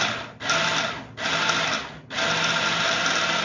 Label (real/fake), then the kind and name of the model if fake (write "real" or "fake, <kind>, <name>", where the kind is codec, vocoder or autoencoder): real